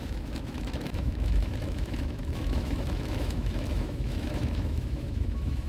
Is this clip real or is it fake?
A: fake